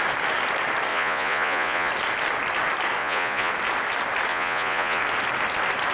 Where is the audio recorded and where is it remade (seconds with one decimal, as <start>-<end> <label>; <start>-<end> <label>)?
0.0-0.9 recorded; 0.9-1.9 remade; 1.9-3.0 recorded; 3.0-3.5 remade; 3.5-4.3 recorded; 4.3-5.0 remade; 5.0-5.9 recorded